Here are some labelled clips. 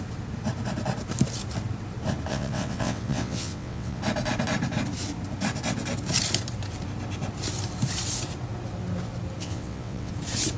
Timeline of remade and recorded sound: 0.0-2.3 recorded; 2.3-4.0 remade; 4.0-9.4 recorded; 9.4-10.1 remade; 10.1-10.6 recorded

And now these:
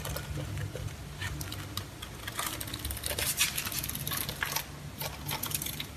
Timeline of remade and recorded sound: 0.0-6.0 recorded